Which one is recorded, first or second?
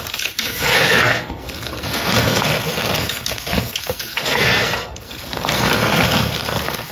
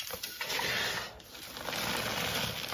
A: second